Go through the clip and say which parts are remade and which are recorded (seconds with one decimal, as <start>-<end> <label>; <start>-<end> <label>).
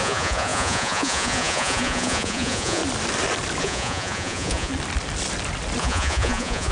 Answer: 0.0-2.8 remade; 2.8-3.6 recorded; 3.6-4.7 remade; 4.7-5.8 recorded; 5.8-6.7 remade